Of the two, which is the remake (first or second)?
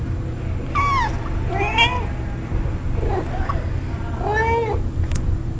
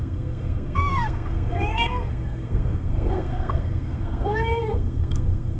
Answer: second